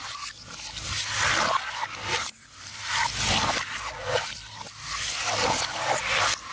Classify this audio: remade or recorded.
recorded